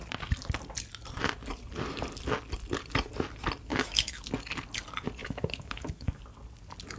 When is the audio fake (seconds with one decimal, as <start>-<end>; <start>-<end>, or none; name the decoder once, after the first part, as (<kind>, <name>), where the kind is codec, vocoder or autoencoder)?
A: 3.7-4.2 (autoencoder, DAC-VAE); 5.2-6.2